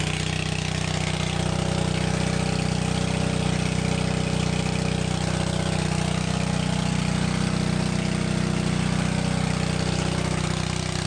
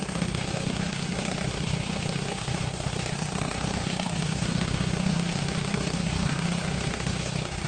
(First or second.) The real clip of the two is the first